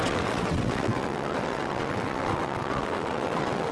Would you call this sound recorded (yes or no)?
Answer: no